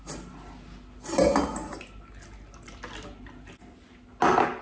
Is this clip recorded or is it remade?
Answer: recorded